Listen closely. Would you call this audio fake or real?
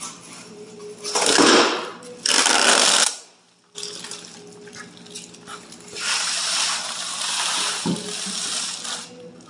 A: real